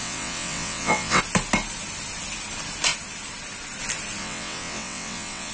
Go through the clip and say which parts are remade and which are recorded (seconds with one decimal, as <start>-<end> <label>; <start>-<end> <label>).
0.0-1.2 remade; 1.2-4.2 recorded; 4.2-5.5 remade